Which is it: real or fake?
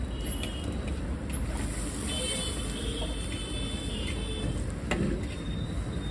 real